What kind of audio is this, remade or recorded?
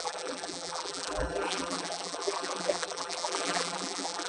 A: remade